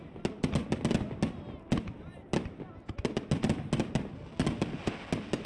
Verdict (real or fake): real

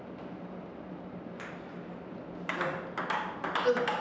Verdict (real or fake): real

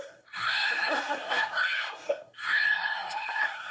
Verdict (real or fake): fake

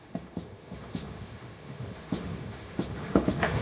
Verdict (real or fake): fake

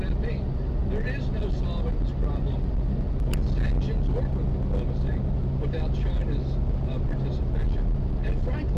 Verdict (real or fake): real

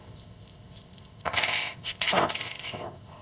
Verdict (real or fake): fake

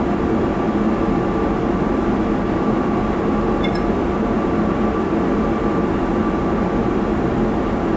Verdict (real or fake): real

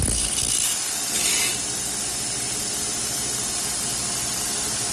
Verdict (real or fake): real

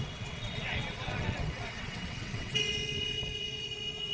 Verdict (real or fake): fake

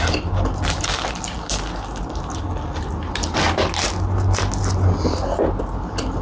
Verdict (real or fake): real